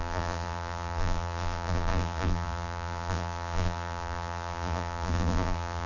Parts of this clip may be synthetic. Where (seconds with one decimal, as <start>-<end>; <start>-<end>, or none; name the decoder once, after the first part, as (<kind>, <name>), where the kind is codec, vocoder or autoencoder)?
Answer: 0.0-5.9 (vocoder, BigVGAN v2)